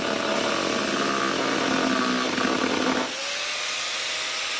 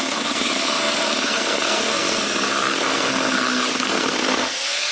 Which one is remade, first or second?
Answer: second